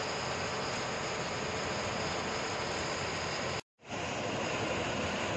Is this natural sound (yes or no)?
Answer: yes